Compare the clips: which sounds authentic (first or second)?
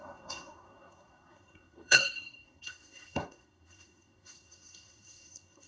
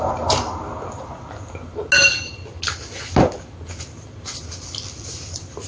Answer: second